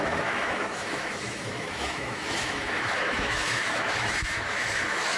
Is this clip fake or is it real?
fake